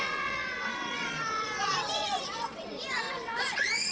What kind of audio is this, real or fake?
fake